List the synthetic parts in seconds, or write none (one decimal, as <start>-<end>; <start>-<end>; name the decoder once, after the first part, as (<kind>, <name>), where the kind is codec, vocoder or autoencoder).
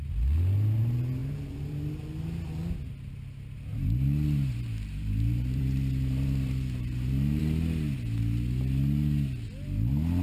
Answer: 1.2-1.9 (vocoder, BigVGAN v2); 3.7-7.4